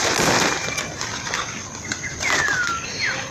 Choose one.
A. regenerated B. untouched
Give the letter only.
B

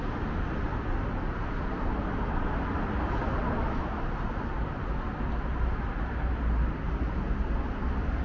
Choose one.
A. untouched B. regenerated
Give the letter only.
A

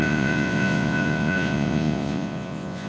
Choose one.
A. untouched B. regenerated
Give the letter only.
B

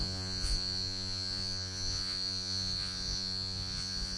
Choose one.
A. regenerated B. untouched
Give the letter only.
A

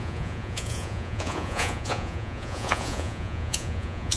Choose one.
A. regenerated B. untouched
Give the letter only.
A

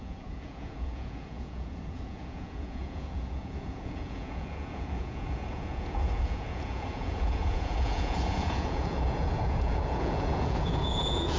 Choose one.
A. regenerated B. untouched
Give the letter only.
A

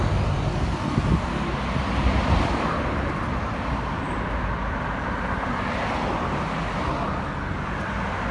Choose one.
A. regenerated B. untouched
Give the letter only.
B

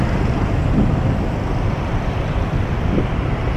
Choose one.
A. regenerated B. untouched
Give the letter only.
B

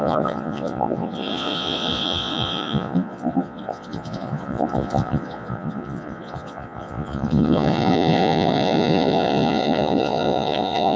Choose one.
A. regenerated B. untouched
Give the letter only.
A